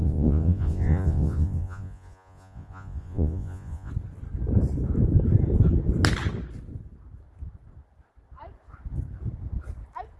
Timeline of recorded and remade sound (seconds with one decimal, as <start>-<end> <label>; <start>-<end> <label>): 0.0-3.9 remade; 3.9-10.2 recorded